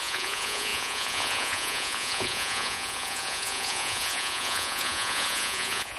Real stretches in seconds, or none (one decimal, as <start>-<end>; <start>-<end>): none